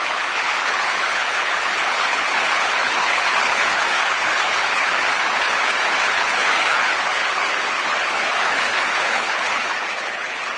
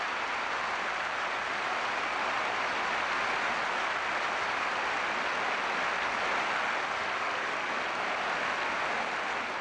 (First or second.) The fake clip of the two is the first